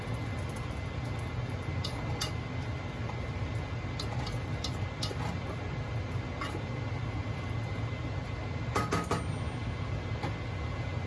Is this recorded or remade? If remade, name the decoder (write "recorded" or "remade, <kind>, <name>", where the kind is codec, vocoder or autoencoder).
recorded